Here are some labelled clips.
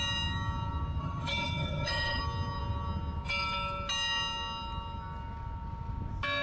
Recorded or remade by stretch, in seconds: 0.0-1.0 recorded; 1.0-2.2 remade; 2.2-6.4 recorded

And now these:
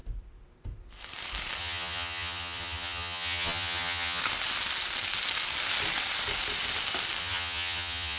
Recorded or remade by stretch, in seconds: 0.0-1.6 recorded; 1.6-4.2 remade; 4.2-7.2 recorded; 7.2-8.2 remade

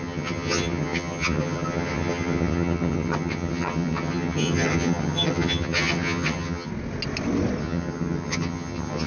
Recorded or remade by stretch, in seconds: 0.0-6.7 remade; 6.7-7.6 recorded; 7.6-9.1 remade

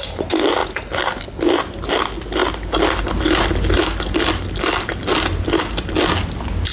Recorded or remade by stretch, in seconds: 0.0-6.7 recorded

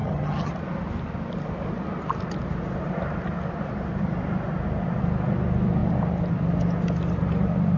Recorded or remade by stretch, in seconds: 0.0-0.5 remade; 0.5-7.8 recorded